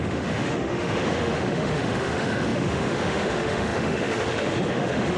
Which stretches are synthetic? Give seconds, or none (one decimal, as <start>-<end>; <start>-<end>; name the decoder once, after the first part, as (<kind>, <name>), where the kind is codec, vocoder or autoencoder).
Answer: 0.0-5.2 (autoencoder, DAC-VAE)